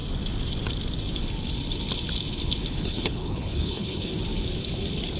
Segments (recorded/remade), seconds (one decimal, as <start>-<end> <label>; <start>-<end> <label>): 0.0-2.7 recorded; 2.7-4.1 remade; 4.1-5.2 recorded